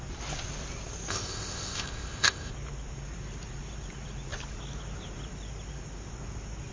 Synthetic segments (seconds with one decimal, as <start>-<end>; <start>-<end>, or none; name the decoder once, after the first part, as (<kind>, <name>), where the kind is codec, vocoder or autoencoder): 1.1-2.5 (codec, ZipCodec)